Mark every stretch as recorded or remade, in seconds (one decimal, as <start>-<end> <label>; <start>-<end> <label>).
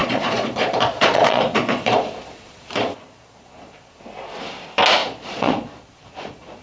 0.0-4.0 remade; 4.0-5.0 recorded; 5.0-6.6 remade